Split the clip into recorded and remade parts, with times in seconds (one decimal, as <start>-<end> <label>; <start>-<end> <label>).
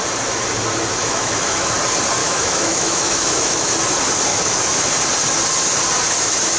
0.0-1.0 recorded; 1.0-1.7 remade; 1.7-2.2 recorded; 2.2-3.7 remade; 3.7-4.3 recorded; 4.3-4.9 remade; 4.9-6.6 recorded